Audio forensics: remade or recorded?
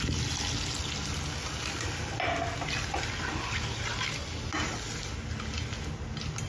recorded